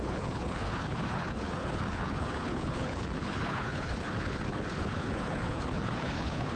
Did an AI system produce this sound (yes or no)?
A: yes